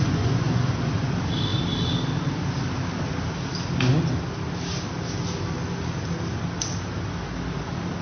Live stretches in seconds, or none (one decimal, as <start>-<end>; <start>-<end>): 1.1-8.0